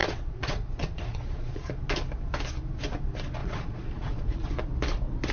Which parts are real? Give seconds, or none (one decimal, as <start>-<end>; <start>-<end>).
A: 1.7-3.4; 4.5-5.3